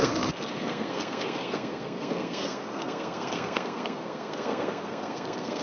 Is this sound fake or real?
fake